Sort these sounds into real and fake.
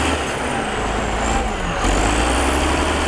real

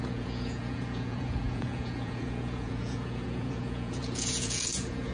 fake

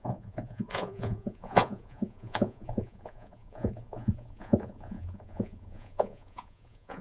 fake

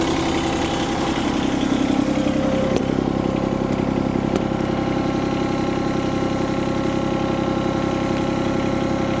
real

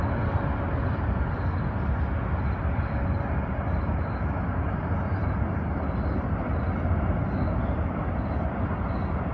real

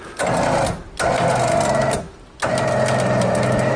real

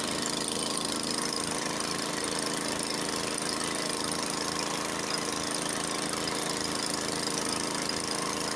real